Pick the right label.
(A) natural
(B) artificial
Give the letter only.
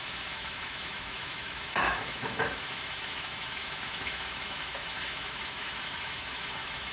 B